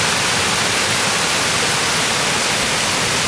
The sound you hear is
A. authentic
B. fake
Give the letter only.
A